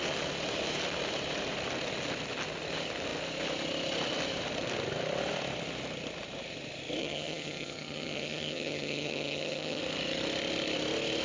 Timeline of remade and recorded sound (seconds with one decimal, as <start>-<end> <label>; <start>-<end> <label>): 0.0-7.0 recorded; 7.0-9.8 remade; 9.8-11.2 recorded